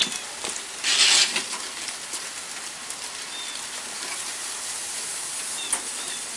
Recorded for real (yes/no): yes